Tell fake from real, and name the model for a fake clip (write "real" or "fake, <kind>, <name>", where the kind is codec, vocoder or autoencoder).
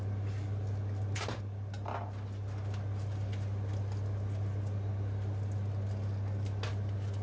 real